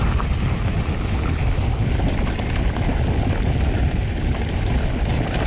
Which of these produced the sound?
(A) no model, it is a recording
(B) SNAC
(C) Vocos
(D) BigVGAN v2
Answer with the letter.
A